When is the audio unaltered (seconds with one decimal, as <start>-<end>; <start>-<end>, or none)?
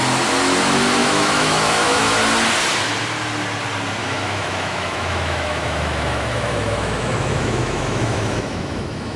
0.0-1.0; 2.1-4.0